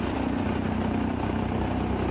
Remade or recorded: recorded